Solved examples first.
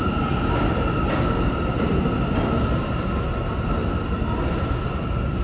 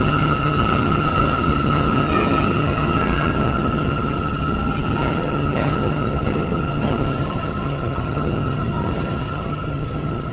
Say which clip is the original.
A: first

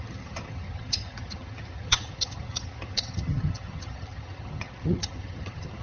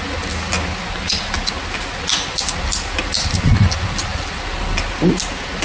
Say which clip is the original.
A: second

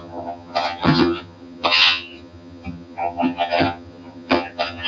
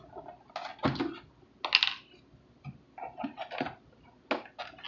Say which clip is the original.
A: second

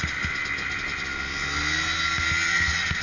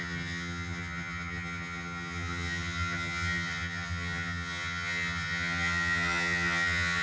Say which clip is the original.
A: first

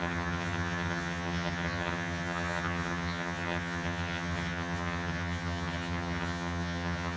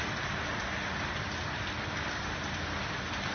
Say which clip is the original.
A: second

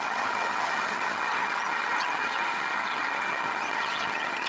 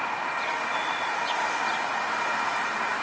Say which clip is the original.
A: second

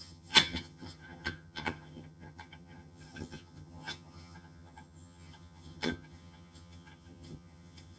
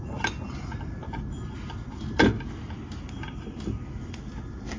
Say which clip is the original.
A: second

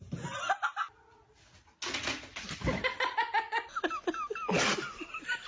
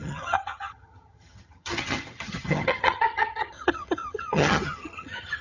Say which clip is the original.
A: first